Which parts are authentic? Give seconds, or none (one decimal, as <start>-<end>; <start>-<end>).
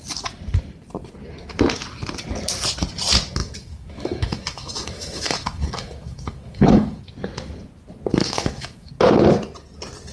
0.0-3.4; 7.0-8.2; 8.9-10.1